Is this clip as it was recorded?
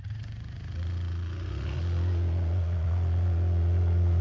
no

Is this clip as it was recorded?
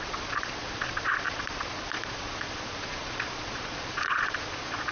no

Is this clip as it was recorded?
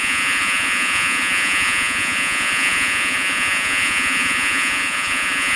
no